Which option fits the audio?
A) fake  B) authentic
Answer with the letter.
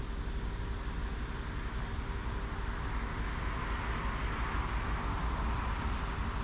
B